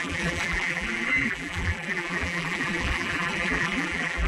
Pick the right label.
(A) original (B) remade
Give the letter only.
B